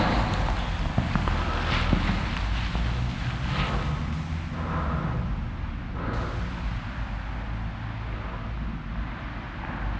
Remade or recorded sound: recorded